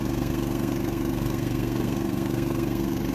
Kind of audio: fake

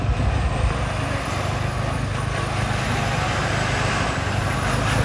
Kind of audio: real